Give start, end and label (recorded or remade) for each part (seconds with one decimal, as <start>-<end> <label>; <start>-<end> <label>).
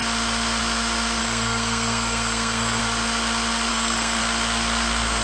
0.0-1.2 recorded; 1.2-2.8 remade; 2.8-3.7 recorded; 3.7-4.2 remade; 4.2-5.2 recorded